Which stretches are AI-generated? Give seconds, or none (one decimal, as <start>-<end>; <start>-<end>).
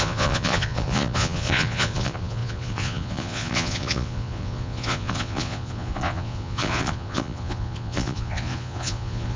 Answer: 0.0-9.4